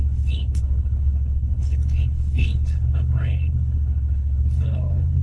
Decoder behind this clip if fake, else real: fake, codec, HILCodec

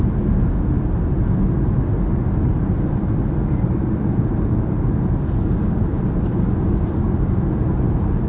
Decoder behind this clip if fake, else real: real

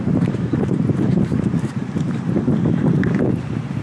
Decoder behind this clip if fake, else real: fake, vocoder, BigVGAN v2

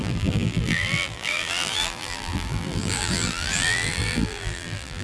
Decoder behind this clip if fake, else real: fake, vocoder, BigVGAN v2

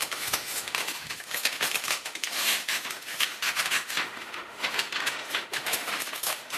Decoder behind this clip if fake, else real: fake, autoencoder, DAC-VAE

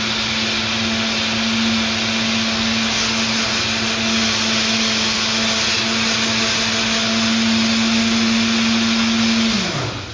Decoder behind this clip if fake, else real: real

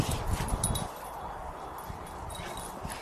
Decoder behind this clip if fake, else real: real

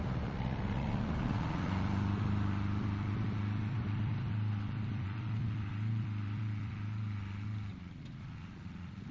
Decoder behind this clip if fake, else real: real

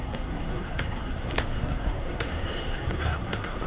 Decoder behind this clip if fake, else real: fake, codec, SNAC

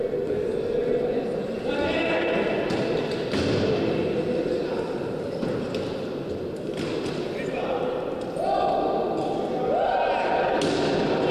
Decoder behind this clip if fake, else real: real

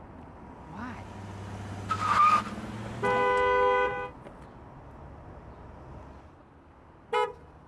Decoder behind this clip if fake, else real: real